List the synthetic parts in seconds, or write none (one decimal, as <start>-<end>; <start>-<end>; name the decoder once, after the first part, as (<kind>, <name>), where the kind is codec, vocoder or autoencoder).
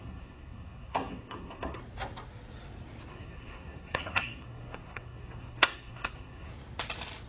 0.0-1.8 (codec, SNAC); 3.1-6.5